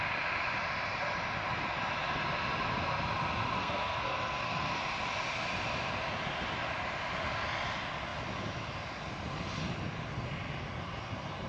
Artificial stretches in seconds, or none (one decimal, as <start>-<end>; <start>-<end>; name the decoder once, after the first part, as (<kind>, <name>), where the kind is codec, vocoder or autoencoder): 3.6-4.7 (codec, SNAC)